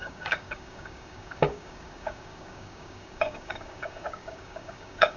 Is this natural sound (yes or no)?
no